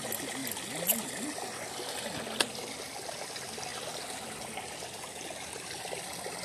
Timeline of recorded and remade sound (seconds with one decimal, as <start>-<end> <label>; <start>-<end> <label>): 0.0-6.4 recorded